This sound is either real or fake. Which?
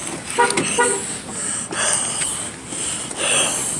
real